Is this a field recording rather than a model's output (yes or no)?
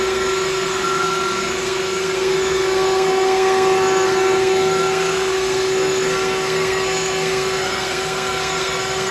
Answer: no